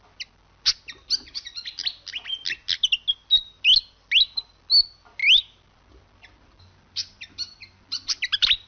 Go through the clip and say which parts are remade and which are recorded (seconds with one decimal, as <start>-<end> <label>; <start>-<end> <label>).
0.0-8.7 recorded